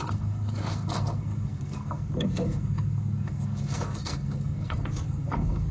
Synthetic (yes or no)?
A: yes